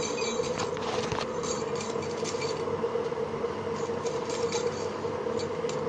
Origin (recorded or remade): recorded